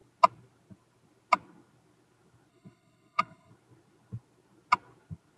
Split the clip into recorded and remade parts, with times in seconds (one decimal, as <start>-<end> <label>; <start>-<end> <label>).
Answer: 0.0-2.5 recorded; 2.5-3.5 remade; 3.5-5.4 recorded